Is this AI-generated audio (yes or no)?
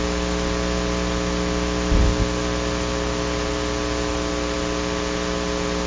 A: no